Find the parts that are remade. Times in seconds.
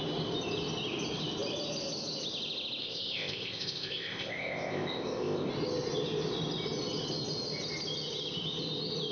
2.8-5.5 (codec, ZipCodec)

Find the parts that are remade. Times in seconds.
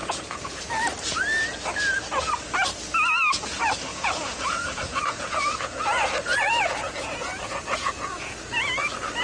0.0-0.6 (vocoder, Vocos); 3.9-8.3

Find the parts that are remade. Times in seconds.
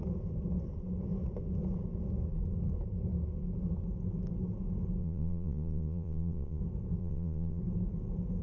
5.0-6.6 (vocoder, Vocos); 7.0-7.6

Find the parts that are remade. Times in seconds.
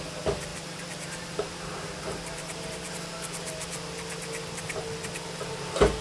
0.5-3.0 (vocoder, BigVGAN v2)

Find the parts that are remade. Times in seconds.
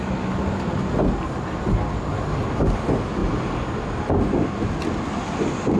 none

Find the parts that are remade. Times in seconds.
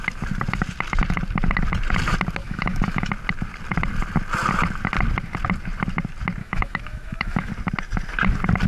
2.4-3.1 (autoencoder, DAC-VAE); 6.4-7.5